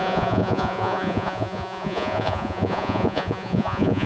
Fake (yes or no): yes